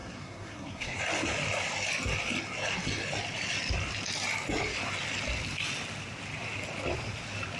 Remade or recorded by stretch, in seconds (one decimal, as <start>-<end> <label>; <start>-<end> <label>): 0.0-1.0 remade; 1.0-7.6 recorded